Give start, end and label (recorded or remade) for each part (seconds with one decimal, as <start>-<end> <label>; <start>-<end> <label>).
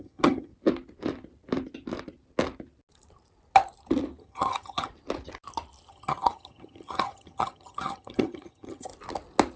0.0-0.5 remade; 0.5-4.2 recorded; 4.2-4.9 remade; 4.9-5.9 recorded; 5.9-8.9 remade; 8.9-9.6 recorded